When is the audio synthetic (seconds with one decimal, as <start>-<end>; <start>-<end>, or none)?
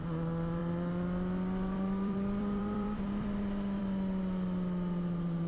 0.6-3.8